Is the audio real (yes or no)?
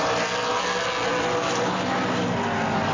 yes